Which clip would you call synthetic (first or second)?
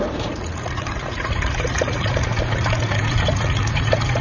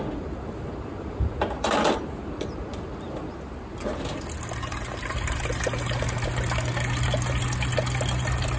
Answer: first